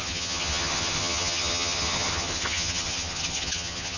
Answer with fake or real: fake